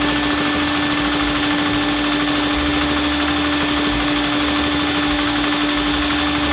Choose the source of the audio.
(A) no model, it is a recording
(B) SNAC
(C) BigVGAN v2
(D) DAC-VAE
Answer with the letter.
A